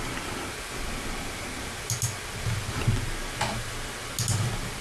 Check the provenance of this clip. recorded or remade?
recorded